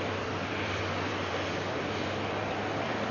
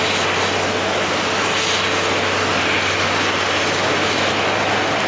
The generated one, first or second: first